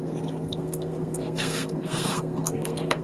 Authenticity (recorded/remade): remade